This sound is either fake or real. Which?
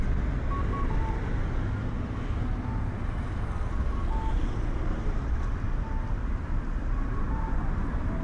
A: real